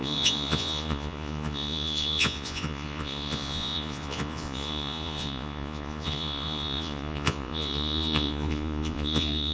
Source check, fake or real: fake